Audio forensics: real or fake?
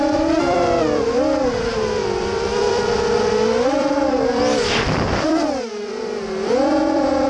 fake